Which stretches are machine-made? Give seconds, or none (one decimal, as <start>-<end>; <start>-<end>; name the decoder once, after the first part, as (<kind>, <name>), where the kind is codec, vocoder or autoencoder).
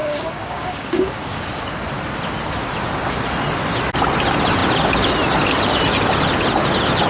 0.0-1.6 (codec, DAC)